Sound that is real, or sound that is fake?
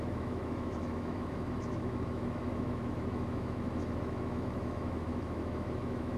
fake